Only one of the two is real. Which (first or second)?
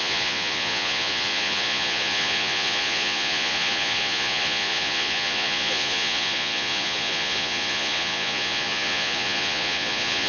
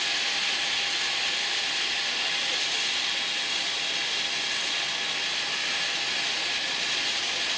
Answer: second